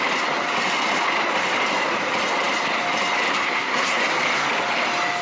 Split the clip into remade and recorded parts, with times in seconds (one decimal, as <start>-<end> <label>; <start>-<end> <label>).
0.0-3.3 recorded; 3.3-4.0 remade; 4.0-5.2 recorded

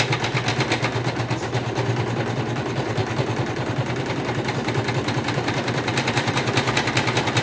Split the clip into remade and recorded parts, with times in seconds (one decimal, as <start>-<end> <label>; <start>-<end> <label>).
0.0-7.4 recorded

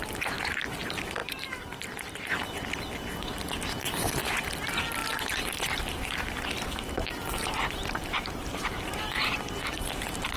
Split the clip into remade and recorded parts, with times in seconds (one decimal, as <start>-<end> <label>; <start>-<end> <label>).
0.0-1.2 recorded; 1.2-2.3 remade; 2.3-5.0 recorded; 5.0-9.2 remade; 9.2-10.4 recorded